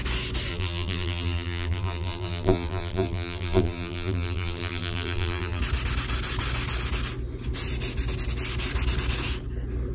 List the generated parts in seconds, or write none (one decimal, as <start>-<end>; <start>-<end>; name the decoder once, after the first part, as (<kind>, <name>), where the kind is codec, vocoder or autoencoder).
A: 0.5-5.6 (vocoder, BigVGAN v2)